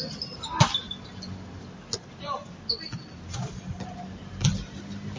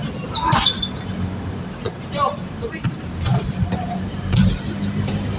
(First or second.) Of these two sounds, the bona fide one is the first